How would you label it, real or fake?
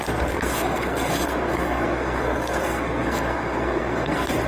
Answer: fake